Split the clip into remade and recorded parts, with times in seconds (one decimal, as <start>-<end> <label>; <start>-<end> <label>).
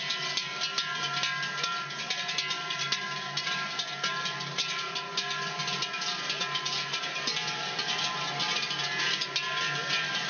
0.0-10.3 recorded